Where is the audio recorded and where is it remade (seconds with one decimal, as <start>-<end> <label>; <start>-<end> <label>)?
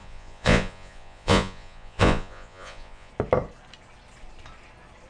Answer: 0.0-3.1 remade; 3.1-5.1 recorded